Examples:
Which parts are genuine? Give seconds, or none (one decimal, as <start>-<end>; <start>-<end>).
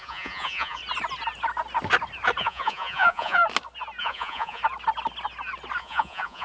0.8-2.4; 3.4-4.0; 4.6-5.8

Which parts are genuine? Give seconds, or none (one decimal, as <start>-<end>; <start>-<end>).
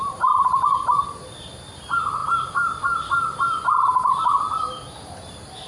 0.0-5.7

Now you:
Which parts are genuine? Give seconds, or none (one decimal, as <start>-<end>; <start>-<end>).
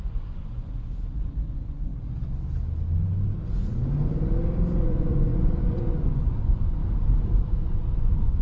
1.9-4.8; 6.8-7.4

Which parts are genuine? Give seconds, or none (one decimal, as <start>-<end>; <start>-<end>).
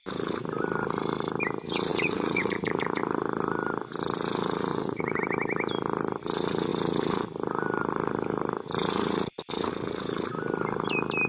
0.0-1.9; 3.0-4.7; 5.2-11.3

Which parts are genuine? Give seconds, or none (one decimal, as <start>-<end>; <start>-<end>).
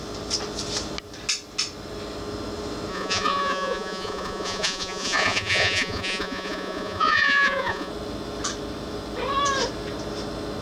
0.0-2.9; 7.9-10.6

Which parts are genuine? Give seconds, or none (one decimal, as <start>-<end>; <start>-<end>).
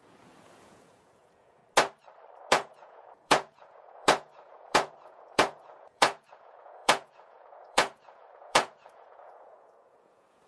1.6-2.5